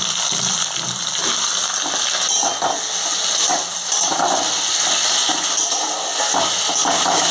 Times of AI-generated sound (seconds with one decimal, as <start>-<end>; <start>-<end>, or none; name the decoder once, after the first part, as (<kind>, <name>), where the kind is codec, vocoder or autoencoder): none